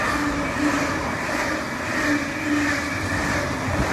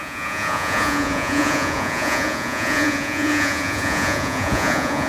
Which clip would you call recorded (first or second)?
first